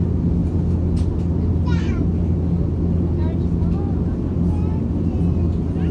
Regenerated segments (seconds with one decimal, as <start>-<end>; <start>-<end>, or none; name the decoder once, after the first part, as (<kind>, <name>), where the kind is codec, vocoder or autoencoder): none